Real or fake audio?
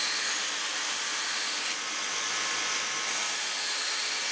real